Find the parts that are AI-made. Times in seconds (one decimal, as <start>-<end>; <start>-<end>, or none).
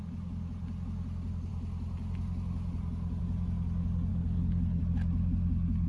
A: 4.1-4.8